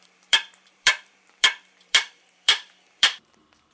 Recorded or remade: remade